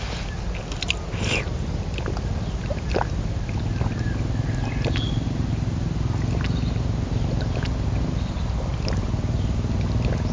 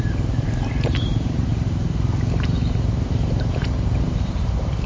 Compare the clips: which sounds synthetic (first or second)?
second